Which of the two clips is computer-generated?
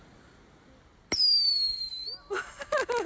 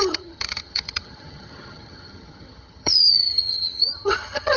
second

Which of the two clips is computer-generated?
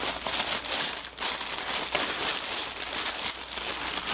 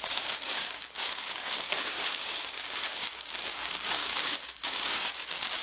second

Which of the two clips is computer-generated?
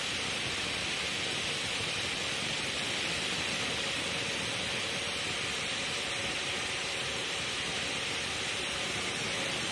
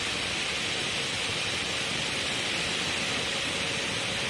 first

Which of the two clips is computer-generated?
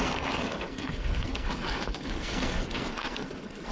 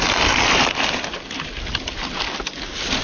first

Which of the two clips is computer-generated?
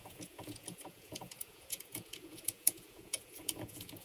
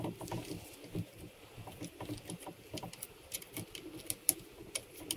first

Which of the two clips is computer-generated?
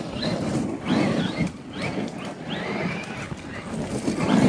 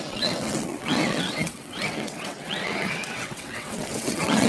second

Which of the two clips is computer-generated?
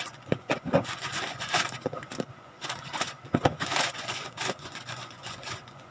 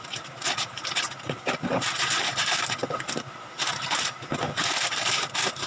first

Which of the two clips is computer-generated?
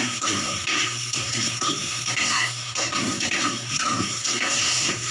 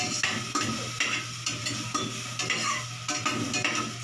first